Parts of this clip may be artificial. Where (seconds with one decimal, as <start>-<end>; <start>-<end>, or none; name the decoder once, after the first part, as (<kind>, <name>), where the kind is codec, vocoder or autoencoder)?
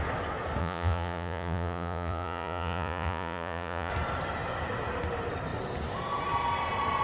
0.6-3.9 (vocoder, Vocos)